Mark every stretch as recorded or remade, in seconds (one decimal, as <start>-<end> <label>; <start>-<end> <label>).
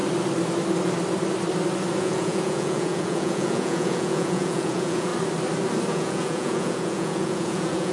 0.0-2.0 recorded; 2.0-5.1 remade; 5.1-5.9 recorded; 5.9-7.9 remade